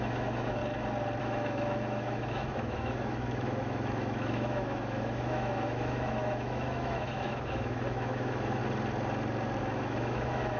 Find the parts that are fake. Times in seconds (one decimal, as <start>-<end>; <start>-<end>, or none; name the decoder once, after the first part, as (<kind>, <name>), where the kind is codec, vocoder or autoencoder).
0.0-0.6 (autoencoder, DAC-VAE); 1.2-8.6; 9.6-10.6